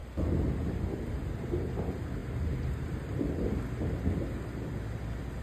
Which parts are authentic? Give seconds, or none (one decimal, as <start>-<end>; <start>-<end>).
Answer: 0.0-5.4

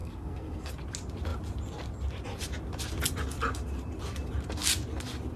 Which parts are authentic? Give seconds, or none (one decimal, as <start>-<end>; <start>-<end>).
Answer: 0.7-5.4

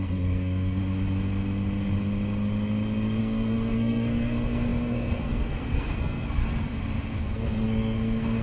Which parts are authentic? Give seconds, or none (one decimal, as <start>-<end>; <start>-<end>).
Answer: 0.8-3.2; 6.4-7.2

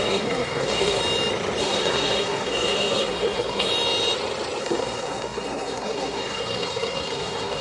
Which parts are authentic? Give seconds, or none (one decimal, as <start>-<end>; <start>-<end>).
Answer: 1.0-1.6; 3.7-4.6